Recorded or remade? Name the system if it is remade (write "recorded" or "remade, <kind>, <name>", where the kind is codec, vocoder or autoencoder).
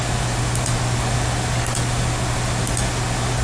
recorded